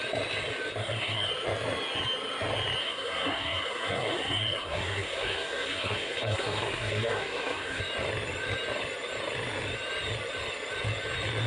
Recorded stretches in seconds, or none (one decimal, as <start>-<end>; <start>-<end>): 0.0-0.8; 1.3-2.8; 7.8-11.5